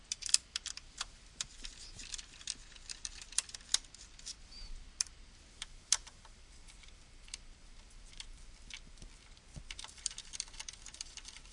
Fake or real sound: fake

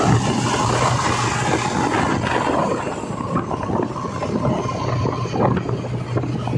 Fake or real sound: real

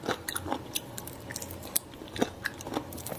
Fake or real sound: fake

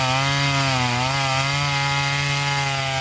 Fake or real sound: real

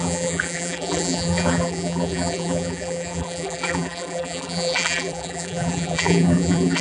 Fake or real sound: fake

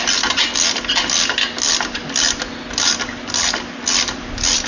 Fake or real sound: real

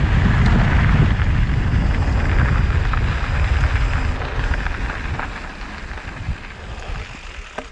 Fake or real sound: real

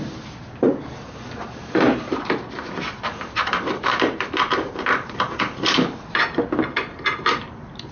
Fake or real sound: fake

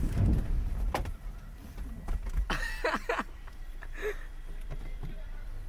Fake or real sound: fake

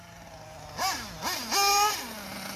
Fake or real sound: real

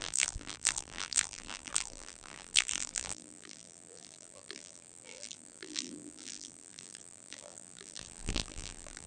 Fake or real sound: fake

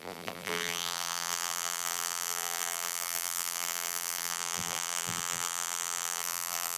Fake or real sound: fake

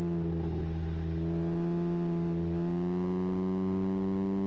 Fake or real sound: real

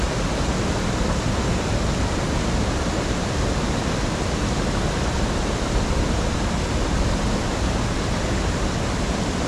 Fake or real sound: real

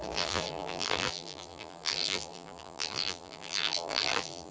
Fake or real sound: fake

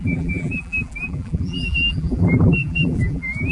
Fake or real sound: fake